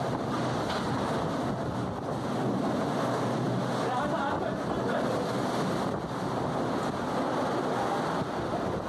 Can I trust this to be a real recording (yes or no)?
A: yes